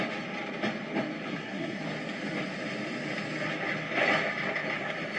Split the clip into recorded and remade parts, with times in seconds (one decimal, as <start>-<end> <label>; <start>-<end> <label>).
0.0-1.3 recorded; 1.3-1.8 remade; 1.8-5.2 recorded